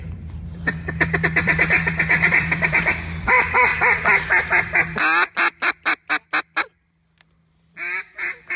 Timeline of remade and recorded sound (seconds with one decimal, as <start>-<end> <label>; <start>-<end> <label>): 0.0-8.6 remade